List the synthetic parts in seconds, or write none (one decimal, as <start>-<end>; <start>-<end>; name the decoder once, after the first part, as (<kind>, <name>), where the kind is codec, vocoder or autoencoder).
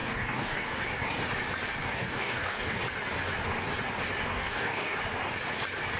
0.0-0.8 (codec, DAC); 1.8-2.8; 4.3-5.0